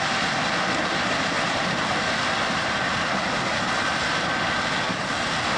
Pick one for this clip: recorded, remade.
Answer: recorded